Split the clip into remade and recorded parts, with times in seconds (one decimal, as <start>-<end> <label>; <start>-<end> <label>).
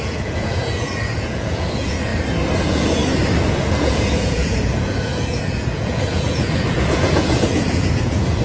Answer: 0.0-2.1 remade; 2.1-2.6 recorded; 2.6-3.0 remade; 3.0-3.5 recorded; 3.5-8.4 remade